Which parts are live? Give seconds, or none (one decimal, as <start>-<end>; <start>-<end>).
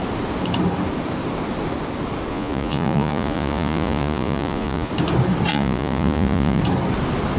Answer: 0.0-2.3; 4.9-5.5; 6.6-7.4